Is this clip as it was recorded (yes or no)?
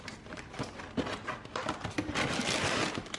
no